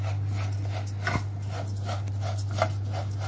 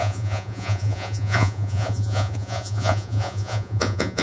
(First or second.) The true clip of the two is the first